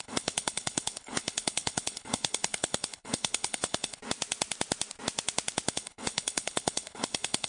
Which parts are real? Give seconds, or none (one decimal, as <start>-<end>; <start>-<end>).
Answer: 4.0-5.7